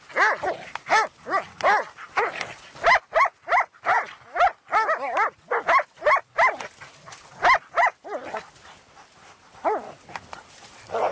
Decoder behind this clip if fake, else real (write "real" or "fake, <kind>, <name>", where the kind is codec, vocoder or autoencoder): real